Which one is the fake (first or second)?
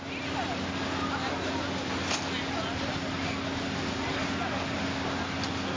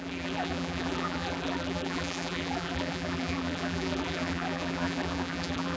second